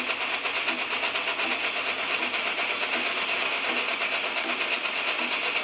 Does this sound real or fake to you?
real